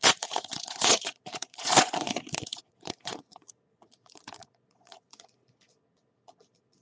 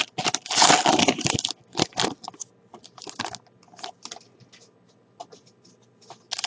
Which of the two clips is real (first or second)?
second